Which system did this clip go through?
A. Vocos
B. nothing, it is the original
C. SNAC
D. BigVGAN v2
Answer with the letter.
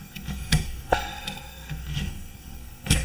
C